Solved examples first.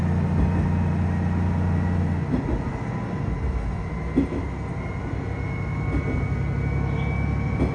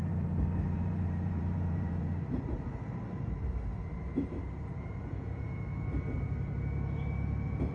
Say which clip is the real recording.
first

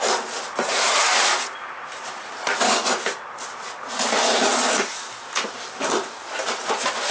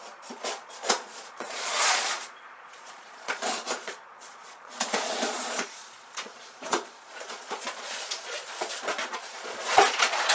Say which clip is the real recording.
first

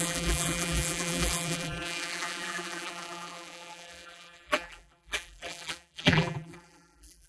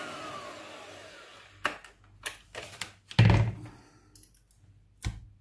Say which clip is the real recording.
second